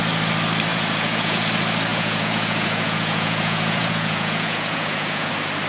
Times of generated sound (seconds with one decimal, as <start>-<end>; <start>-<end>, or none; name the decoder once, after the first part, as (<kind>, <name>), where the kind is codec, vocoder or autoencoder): 0.7-1.5 (vocoder, Vocos); 1.9-5.3